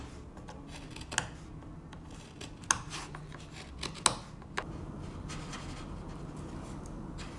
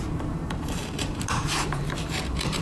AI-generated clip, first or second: second